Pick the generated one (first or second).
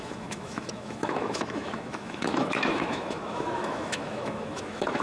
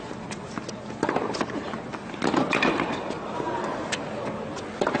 first